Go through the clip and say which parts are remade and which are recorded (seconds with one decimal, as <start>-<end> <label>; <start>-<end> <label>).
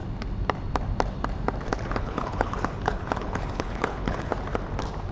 0.0-2.0 recorded; 2.0-4.3 remade; 4.3-5.1 recorded